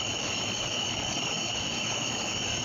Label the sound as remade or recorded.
remade